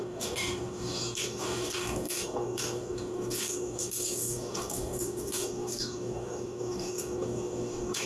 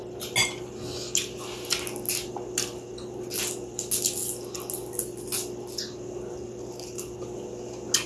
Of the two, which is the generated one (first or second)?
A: first